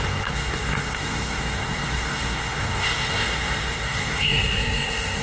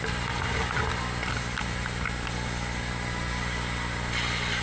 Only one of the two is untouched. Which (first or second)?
second